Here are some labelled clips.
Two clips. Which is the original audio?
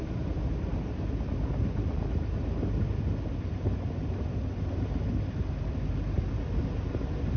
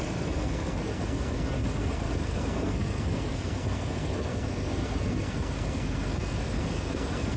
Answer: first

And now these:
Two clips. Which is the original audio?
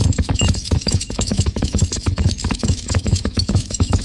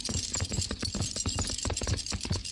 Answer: second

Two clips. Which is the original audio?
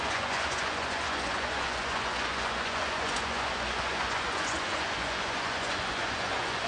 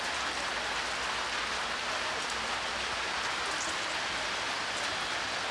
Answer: second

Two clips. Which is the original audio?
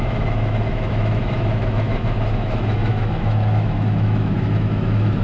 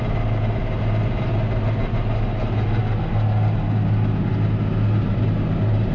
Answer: second